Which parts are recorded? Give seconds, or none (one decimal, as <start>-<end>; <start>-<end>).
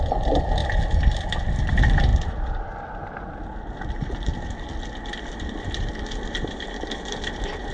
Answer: 0.6-1.4; 2.1-3.7; 4.3-5.2